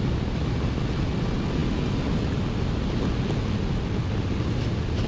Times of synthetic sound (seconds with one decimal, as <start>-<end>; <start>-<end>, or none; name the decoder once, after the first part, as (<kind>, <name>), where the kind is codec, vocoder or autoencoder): none